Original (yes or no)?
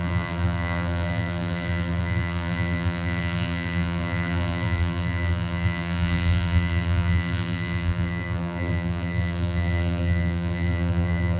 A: no